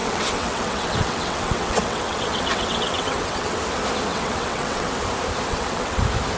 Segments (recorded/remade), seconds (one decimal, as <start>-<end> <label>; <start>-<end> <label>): 0.0-3.6 remade; 3.6-4.1 recorded; 4.1-4.9 remade; 4.9-5.5 recorded; 5.5-6.0 remade; 6.0-6.4 recorded